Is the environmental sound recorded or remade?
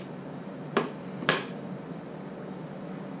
remade